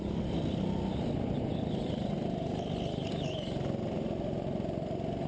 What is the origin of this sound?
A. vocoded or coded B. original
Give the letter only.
B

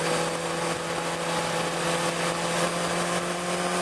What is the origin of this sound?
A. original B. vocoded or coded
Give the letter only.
A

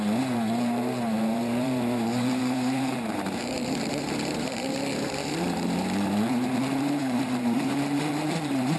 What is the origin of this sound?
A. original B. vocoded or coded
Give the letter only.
B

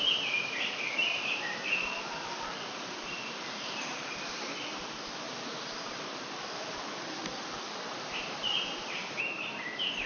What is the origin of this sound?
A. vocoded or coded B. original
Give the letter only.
A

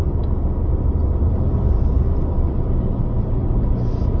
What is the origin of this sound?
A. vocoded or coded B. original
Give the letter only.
B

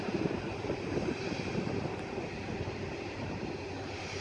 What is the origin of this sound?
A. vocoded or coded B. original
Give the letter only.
B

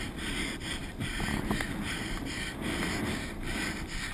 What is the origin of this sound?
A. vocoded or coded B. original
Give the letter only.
B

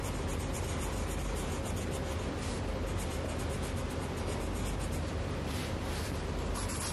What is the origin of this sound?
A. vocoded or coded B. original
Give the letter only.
B